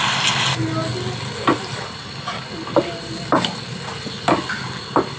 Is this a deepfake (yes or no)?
no